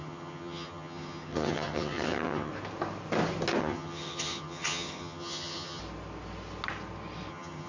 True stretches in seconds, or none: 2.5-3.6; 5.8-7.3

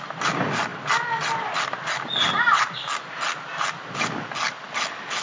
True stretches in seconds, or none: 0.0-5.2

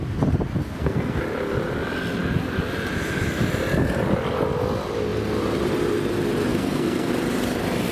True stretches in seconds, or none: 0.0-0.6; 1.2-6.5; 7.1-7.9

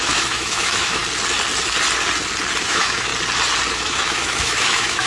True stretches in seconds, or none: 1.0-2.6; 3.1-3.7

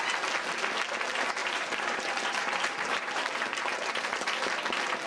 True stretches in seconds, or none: 0.0-1.4; 4.5-5.1

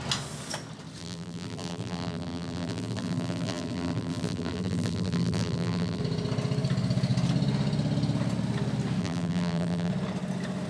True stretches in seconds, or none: 0.0-1.0; 6.0-9.0; 9.9-10.7

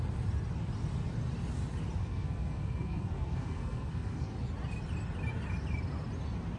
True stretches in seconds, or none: 0.0-2.0; 4.3-6.6

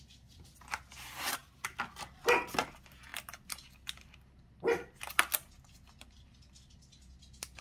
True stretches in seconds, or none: 0.0-7.6